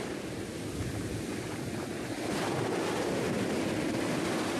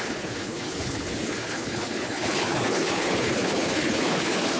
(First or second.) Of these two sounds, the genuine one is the first